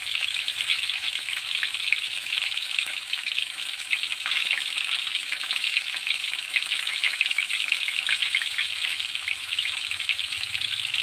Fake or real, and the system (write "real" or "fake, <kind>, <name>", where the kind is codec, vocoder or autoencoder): fake, autoencoder, DAC-VAE